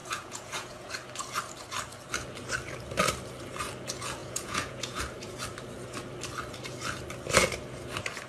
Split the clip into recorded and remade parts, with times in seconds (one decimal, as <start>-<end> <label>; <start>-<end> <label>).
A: 0.0-0.9 remade; 0.9-4.2 recorded; 4.2-5.0 remade; 5.0-8.3 recorded